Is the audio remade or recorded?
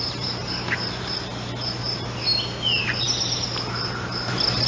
recorded